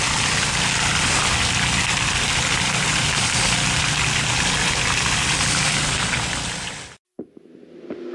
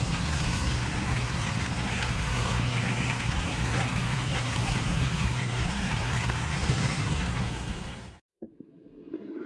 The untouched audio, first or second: first